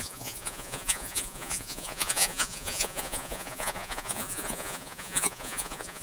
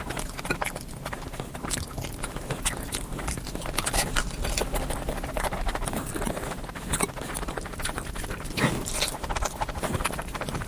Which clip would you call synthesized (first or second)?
first